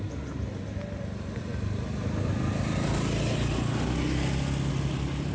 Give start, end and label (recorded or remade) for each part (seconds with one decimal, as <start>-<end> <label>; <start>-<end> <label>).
0.0-5.3 recorded